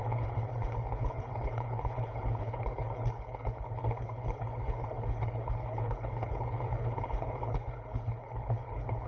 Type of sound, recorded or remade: remade